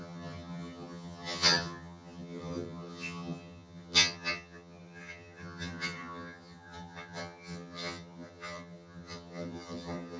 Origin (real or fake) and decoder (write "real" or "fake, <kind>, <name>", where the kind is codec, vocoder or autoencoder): fake, vocoder, HiFi-GAN